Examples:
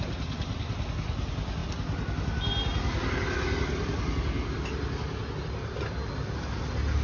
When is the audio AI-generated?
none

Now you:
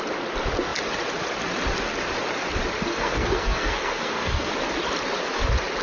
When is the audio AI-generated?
2.9-4.5 (codec, SNAC)

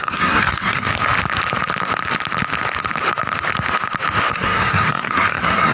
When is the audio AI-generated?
0.0-0.9 (codec, SNAC); 4.3-5.7

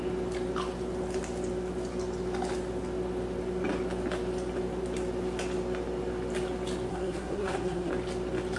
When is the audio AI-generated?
6.9-7.9 (codec, SNAC)

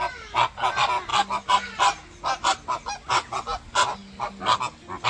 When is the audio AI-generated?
none

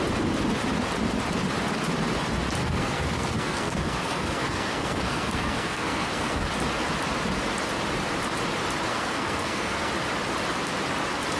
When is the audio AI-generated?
2.6-6.5 (codec, SNAC); 8.9-9.9

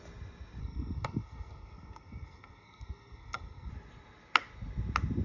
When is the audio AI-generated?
0.6-3.7 (codec, SNAC)